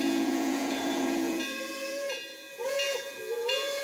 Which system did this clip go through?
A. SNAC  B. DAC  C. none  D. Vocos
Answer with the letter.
D